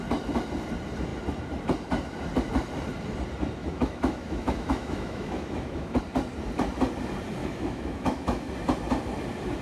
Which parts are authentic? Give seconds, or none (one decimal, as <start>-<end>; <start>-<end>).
0.0-3.6; 6.0-7.4; 8.5-9.6

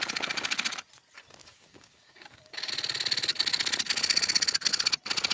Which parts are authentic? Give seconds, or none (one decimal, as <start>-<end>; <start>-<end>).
0.0-1.4; 2.7-5.3

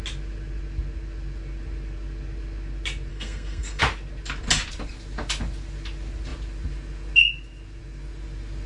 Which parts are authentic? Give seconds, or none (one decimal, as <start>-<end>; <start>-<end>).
0.0-3.1; 3.8-8.7

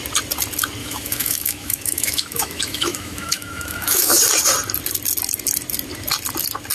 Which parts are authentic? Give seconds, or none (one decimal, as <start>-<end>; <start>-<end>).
0.0-0.8; 4.2-6.7

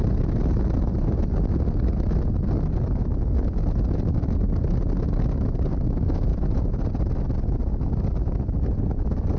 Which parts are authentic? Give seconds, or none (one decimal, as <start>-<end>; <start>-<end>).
0.0-6.3; 6.8-9.4

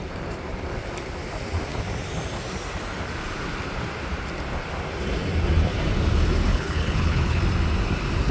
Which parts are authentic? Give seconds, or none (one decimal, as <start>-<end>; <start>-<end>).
0.0-6.5; 7.4-8.3

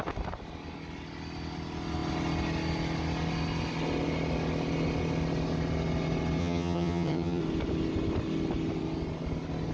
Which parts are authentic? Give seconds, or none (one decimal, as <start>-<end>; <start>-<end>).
0.0-6.4; 7.4-9.7

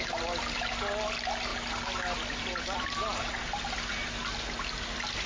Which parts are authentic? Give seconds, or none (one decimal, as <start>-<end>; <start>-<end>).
0.0-1.5; 3.2-4.2